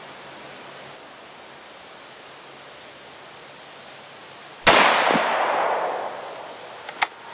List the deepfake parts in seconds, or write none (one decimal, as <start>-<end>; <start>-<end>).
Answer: none